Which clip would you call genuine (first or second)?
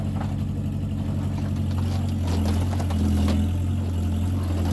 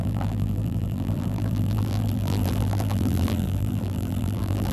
first